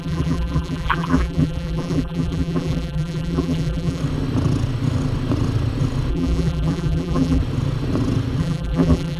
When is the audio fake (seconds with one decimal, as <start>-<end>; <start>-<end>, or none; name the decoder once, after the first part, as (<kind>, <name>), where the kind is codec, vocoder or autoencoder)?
0.0-4.0 (vocoder, BigVGAN v2); 6.1-7.4; 8.4-9.2